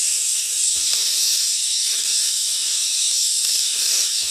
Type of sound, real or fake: fake